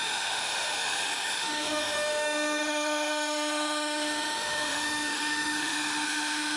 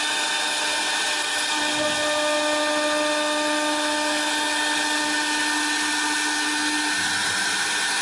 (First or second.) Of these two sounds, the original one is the second